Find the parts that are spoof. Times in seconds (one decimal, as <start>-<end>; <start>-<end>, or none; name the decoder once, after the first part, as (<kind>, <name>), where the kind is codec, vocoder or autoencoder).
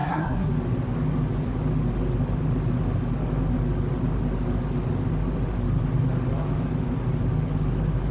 0.0-0.5 (codec, SNAC)